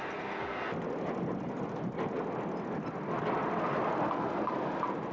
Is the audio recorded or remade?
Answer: recorded